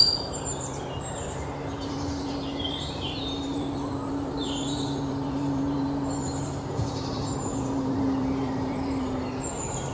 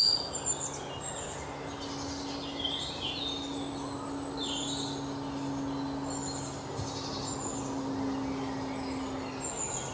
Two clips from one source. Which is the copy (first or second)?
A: first